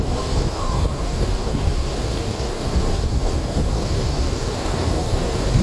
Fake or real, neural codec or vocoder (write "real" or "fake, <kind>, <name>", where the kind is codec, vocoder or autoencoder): fake, codec, DAC